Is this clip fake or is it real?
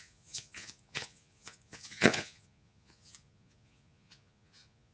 fake